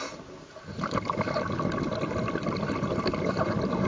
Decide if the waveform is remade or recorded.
recorded